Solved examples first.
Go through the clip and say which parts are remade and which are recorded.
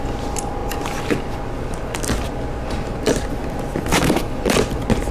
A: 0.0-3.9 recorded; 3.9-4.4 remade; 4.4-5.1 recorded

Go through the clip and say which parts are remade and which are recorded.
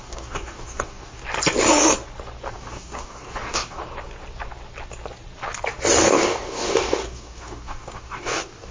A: 0.0-1.2 remade; 1.2-2.5 recorded; 2.5-3.8 remade; 3.8-6.0 recorded; 6.0-8.7 remade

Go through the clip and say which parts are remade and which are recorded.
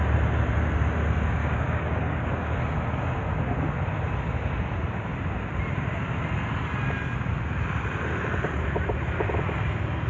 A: 0.0-1.4 recorded; 1.4-2.6 remade; 2.6-10.1 recorded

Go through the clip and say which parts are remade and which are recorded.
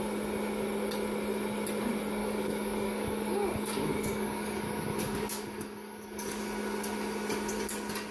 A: 0.0-2.2 recorded; 2.2-6.4 remade; 6.4-8.1 recorded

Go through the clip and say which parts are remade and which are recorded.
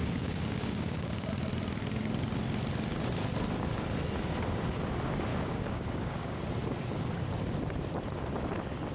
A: 0.0-1.3 remade; 1.3-5.3 recorded; 5.3-6.4 remade; 6.4-8.9 recorded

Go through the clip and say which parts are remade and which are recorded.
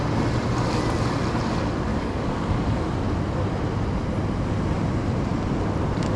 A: 0.0-1.9 recorded; 1.9-2.8 remade; 2.8-6.2 recorded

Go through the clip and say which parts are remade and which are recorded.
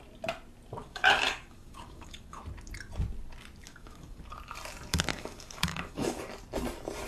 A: 0.0-0.8 recorded; 0.8-2.4 remade; 2.4-3.7 recorded; 3.7-4.2 remade; 4.2-5.1 recorded; 5.1-6.2 remade; 6.2-7.1 recorded